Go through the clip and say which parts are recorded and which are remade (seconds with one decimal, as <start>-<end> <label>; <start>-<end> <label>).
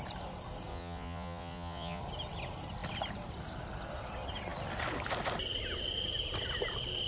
0.0-0.7 recorded; 0.7-2.0 remade; 2.0-7.1 recorded